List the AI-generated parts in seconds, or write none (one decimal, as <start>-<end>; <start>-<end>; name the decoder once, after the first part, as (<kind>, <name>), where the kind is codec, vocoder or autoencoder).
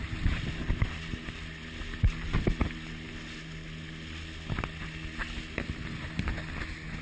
none